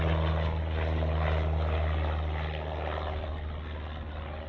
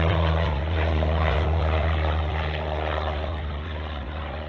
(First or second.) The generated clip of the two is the second